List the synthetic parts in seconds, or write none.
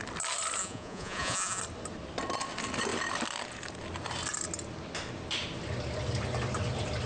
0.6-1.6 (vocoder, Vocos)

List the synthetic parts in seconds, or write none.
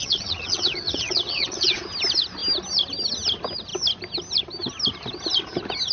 0.0-1.8 (vocoder, WaveNeXt)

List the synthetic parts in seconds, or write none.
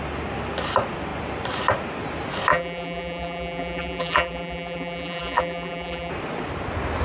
2.5-6.1 (vocoder, BigVGAN v2)